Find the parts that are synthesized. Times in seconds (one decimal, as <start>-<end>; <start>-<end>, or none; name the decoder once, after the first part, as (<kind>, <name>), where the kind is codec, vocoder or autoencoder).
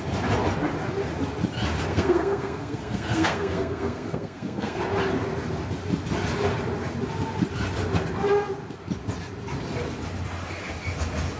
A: 1.9-4.8 (codec, SNAC)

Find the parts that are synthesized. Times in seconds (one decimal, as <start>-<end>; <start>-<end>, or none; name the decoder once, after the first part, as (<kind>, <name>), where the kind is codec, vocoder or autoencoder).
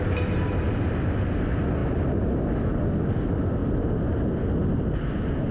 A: none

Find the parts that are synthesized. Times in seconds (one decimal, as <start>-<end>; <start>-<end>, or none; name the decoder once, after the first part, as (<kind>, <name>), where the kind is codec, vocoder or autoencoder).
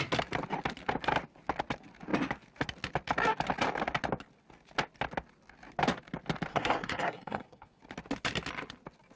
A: 6.5-7.8 (codec, SNAC)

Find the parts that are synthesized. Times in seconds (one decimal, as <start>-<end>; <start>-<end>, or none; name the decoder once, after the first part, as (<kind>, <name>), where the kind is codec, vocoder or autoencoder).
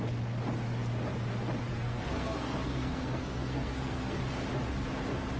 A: 1.7-4.2 (codec, SNAC)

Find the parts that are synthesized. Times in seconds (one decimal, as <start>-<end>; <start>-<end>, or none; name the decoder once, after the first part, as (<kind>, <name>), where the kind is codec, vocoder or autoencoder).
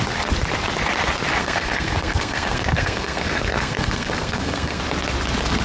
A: 1.4-4.8 (codec, SNAC)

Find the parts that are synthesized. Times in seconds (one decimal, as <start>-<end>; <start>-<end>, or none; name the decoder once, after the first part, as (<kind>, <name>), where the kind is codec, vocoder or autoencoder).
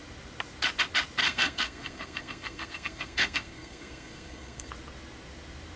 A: 1.2-4.7 (codec, SNAC)